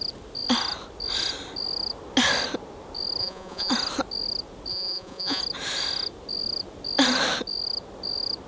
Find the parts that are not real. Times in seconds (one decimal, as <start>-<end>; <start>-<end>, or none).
3.2-3.7; 4.7-5.4